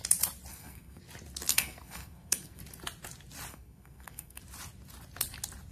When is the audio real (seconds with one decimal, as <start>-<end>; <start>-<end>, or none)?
0.0-0.5; 1.0-1.5; 2.6-3.5; 4.4-5.7